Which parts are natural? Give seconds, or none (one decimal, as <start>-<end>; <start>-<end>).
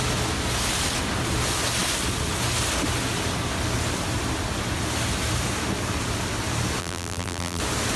0.0-6.8; 7.6-8.0